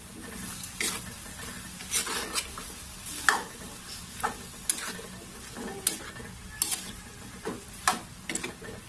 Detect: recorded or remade recorded